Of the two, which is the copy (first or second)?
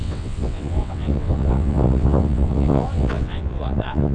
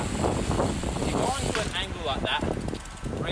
first